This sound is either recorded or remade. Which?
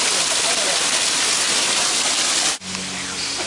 recorded